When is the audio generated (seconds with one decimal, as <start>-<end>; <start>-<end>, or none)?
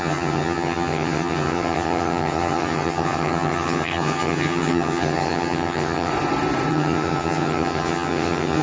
0.0-6.1; 6.7-8.6